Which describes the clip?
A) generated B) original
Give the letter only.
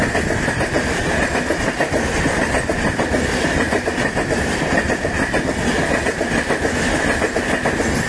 B